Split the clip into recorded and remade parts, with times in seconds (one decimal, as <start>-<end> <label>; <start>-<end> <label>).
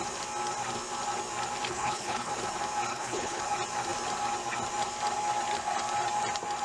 0.0-1.7 recorded; 1.7-2.3 remade; 2.3-2.9 recorded; 2.9-3.4 remade; 3.4-6.6 recorded